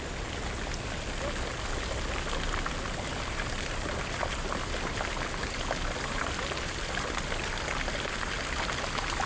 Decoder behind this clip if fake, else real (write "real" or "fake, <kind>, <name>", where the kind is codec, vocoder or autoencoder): real